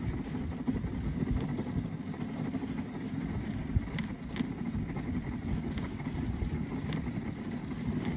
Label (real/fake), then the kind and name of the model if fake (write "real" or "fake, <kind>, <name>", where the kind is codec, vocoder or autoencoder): real